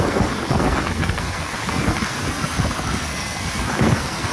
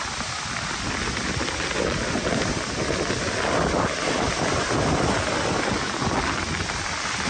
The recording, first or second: second